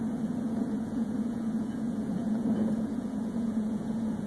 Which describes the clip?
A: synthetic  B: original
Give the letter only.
A